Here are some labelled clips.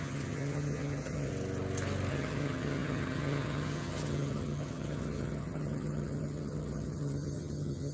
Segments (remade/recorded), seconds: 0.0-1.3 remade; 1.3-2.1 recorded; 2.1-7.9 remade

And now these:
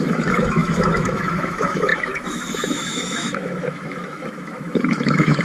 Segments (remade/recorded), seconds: 0.0-5.4 remade

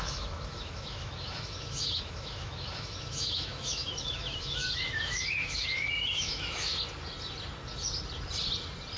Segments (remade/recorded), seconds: 0.0-6.7 remade; 6.7-9.0 recorded

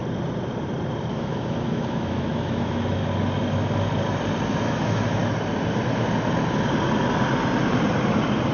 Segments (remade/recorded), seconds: 0.0-1.1 recorded; 1.1-3.0 remade; 3.0-4.6 recorded; 4.6-5.2 remade; 5.2-8.5 recorded

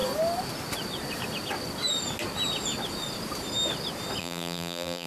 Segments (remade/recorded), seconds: 0.0-4.2 recorded; 4.2-5.1 remade

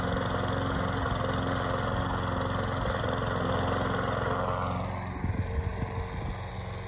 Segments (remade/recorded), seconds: 0.0-6.9 recorded

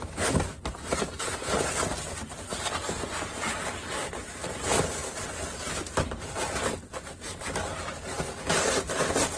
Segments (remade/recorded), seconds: 0.0-9.4 recorded

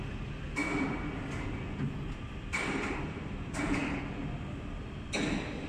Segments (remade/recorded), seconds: 0.0-0.6 remade; 0.6-2.1 recorded; 2.1-3.8 remade; 3.8-5.7 recorded